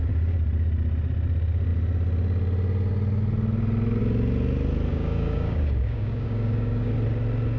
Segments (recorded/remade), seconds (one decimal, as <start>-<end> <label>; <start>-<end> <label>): 0.0-4.9 recorded; 4.9-6.9 remade; 6.9-7.6 recorded

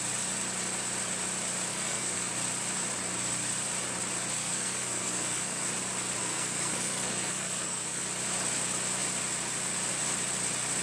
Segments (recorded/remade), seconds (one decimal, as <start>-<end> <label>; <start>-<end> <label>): 0.0-1.7 recorded; 1.7-2.3 remade; 2.3-4.4 recorded; 4.4-5.7 remade; 5.7-6.2 recorded; 6.2-8.0 remade; 8.0-10.8 recorded

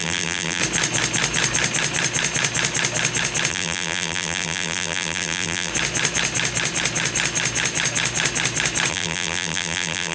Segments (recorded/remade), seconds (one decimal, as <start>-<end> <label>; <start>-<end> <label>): 0.0-0.6 remade; 0.6-3.5 recorded; 3.5-5.7 remade; 5.7-8.9 recorded; 8.9-10.1 remade

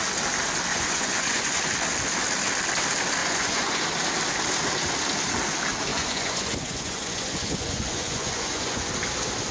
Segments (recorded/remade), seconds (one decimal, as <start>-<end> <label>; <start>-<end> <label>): 0.0-0.7 recorded; 0.7-1.6 remade; 1.6-3.2 recorded; 3.2-3.8 remade; 3.8-5.9 recorded; 5.9-8.9 remade; 8.9-9.5 recorded

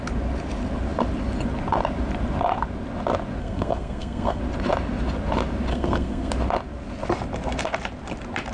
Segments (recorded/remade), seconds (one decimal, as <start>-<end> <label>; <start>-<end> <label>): 0.0-3.4 recorded; 3.4-4.4 remade; 4.4-5.7 recorded; 5.7-6.3 remade; 6.3-8.5 recorded

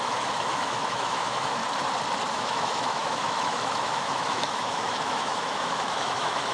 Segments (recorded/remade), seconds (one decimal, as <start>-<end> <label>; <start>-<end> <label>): 0.0-1.6 remade; 1.6-2.3 recorded; 2.3-6.5 remade